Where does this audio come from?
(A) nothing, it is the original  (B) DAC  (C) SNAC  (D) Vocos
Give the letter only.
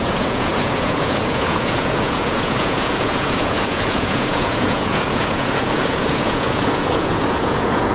D